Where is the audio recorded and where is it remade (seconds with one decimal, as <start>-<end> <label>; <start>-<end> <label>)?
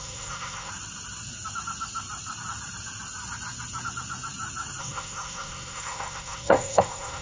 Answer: 0.0-0.7 remade; 0.7-4.8 recorded; 4.8-7.2 remade